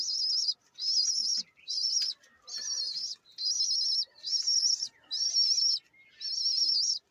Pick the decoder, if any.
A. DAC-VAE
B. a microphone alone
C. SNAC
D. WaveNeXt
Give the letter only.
B